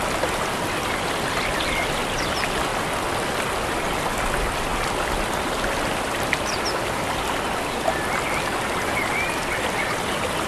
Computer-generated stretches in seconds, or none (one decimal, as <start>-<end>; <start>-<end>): none